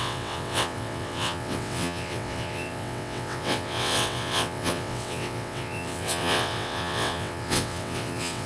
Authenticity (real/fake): fake